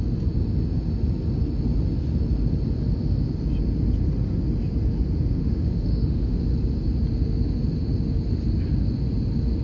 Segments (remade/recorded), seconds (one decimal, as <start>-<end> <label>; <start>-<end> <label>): 0.0-5.4 recorded; 5.4-6.4 remade; 6.4-9.6 recorded